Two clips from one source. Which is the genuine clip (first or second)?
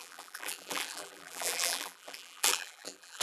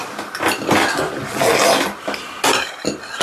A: second